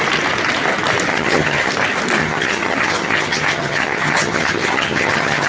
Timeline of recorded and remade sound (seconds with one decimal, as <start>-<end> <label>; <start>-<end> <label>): 0.0-1.1 recorded; 1.1-1.7 remade; 1.7-2.2 recorded; 2.2-5.5 remade